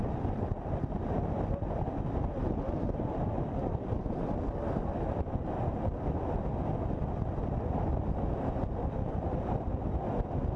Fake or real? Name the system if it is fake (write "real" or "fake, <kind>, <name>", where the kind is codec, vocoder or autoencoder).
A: real